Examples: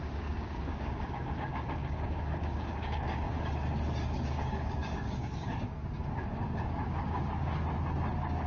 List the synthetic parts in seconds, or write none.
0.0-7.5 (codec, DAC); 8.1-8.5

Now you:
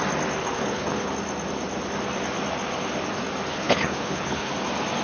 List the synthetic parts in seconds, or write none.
0.4-1.1 (codec, HILCodec); 3.5-4.5

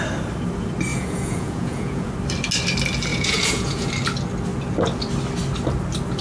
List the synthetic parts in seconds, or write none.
0.9-2.1 (vocoder, Vocos); 3.1-3.9